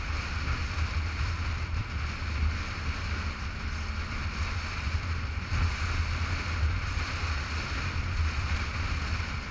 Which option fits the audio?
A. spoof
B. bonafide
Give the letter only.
B